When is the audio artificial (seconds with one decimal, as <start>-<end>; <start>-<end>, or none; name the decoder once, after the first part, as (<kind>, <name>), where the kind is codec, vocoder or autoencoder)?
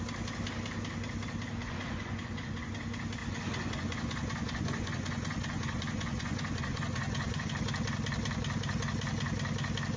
1.6-2.7 (vocoder, Vocos); 3.2-7.5